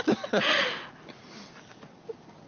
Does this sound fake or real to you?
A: real